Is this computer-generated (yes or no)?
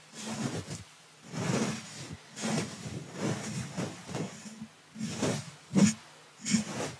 no